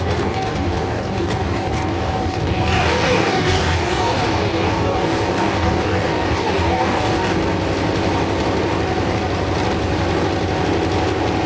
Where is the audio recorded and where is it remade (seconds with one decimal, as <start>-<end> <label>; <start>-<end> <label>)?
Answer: 0.0-7.4 remade; 7.4-11.5 recorded